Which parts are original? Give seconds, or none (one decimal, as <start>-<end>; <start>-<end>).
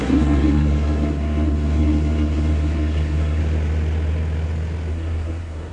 3.4-4.9